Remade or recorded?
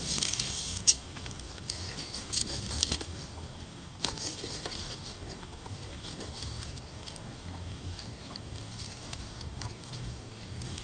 remade